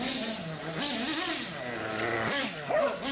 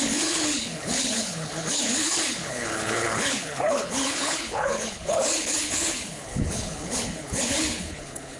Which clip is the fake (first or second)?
second